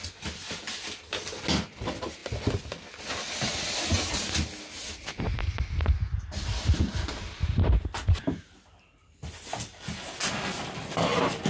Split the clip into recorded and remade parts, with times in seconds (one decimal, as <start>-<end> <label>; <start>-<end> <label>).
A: 0.0-11.5 recorded